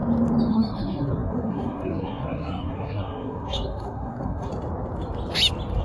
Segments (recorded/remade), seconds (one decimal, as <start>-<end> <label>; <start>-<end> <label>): 0.0-0.5 recorded; 0.5-4.5 remade; 4.5-5.8 recorded